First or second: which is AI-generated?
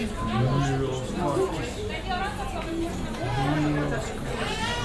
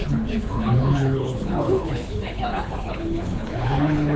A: second